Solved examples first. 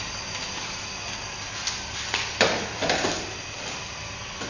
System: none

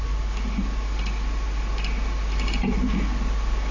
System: none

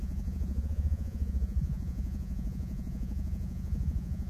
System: vocoder, Vocos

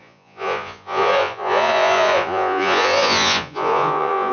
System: vocoder, Vocos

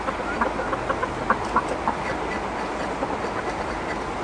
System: none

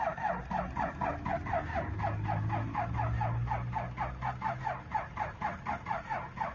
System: none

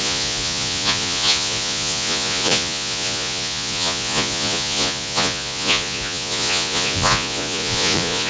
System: vocoder, Vocos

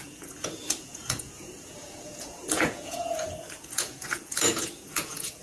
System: vocoder, Vocos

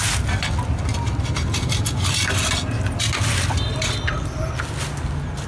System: none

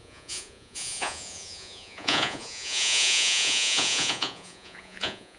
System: vocoder, Vocos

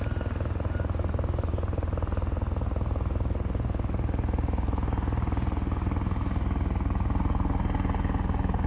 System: none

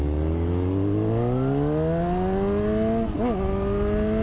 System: none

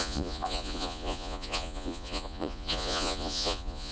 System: vocoder, Vocos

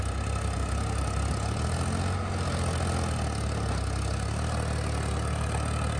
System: none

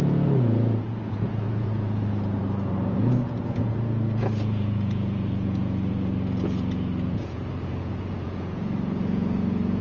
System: vocoder, Vocos